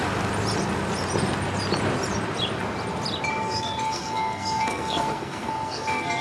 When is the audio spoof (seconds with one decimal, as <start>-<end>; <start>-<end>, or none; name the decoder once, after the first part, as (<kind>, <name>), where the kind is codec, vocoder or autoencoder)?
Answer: 3.3-6.2 (codec, SNAC)